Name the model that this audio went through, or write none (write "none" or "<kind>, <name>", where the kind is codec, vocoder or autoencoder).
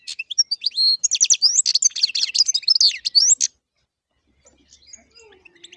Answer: none